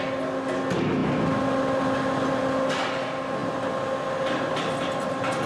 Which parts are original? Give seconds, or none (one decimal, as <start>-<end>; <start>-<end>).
0.0-5.5